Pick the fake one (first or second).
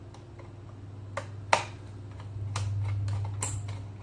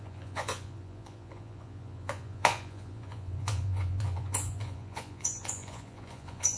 second